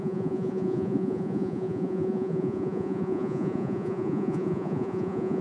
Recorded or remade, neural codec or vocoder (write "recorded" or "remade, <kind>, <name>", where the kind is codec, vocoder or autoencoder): remade, vocoder, Vocos